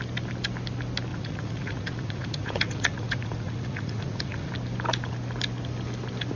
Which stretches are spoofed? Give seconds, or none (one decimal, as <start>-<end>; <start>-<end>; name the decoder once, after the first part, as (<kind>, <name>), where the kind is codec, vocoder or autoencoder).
1.1-4.5 (vocoder, Vocos)